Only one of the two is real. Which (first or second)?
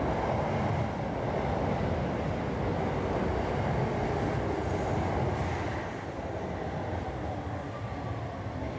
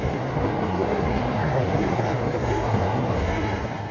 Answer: first